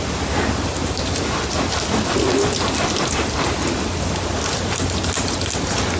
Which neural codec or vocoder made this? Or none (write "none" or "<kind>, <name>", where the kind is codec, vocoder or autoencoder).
none